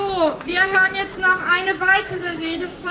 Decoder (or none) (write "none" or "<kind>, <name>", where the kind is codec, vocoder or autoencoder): codec, DAC